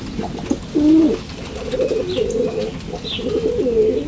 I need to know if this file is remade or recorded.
recorded